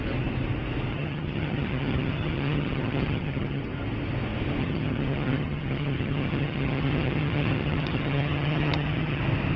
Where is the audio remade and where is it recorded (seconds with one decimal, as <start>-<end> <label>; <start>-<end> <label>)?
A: 0.0-0.9 recorded; 0.9-3.6 remade; 3.6-4.6 recorded; 4.6-9.2 remade; 9.2-9.6 recorded